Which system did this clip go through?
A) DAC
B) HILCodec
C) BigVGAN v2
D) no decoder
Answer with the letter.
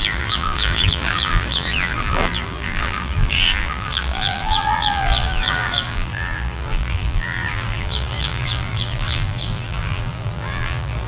C